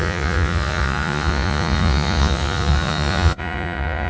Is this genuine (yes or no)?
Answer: no